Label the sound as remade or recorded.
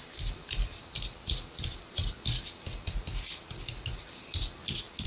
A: recorded